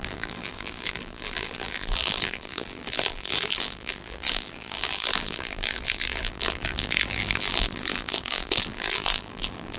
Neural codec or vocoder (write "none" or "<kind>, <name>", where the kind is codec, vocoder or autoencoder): vocoder, BigVGAN v2